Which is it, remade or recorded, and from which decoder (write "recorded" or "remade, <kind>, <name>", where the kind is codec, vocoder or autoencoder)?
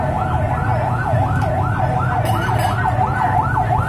recorded